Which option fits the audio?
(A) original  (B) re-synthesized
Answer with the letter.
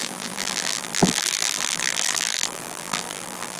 B